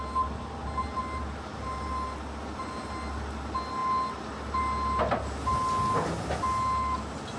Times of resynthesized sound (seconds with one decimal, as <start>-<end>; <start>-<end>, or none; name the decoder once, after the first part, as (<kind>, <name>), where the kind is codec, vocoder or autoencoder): none